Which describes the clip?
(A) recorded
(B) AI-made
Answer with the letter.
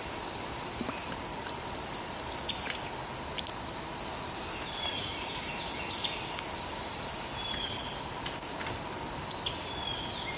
A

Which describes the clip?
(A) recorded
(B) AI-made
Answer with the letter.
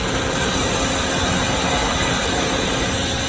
A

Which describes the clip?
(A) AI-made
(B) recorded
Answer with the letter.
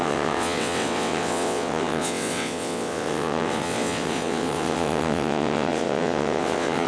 A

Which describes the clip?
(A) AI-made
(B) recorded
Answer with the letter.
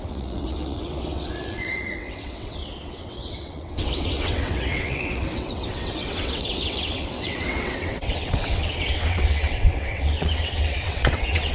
A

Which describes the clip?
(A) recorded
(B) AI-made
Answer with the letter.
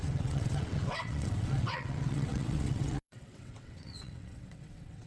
B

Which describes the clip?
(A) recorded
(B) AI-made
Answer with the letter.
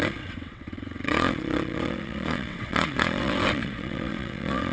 B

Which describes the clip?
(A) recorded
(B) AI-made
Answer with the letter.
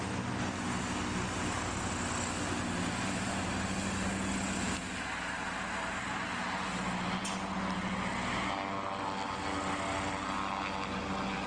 A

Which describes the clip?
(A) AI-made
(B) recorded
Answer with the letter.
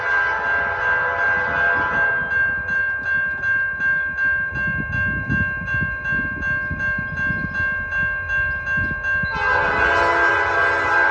B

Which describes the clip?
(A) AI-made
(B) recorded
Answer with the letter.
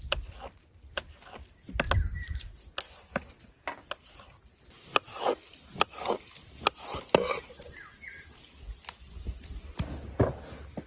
B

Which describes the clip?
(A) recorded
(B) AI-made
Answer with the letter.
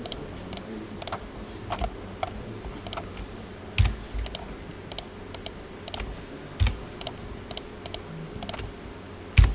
A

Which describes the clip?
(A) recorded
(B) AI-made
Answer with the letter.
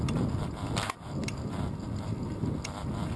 A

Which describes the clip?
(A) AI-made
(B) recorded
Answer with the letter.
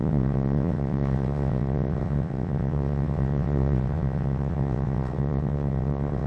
A